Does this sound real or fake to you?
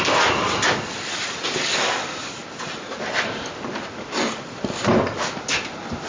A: real